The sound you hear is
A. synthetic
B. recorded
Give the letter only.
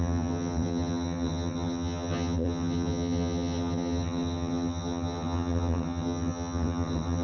A